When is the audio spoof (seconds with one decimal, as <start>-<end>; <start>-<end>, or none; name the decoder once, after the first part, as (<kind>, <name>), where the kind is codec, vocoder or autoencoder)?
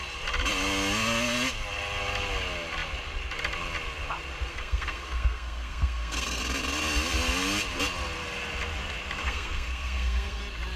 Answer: 4.5-6.4 (codec, SNAC); 9.2-10.4